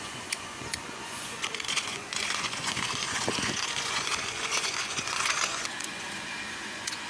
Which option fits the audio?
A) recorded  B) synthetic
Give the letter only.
B